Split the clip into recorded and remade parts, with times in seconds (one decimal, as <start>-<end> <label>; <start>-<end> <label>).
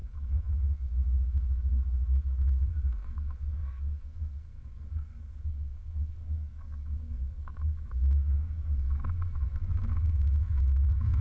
0.0-11.2 remade